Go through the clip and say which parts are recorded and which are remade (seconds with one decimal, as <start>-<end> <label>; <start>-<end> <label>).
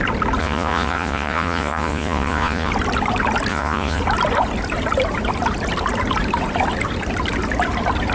0.0-0.4 recorded; 0.4-2.7 remade; 2.7-3.5 recorded; 3.5-4.0 remade; 4.0-8.1 recorded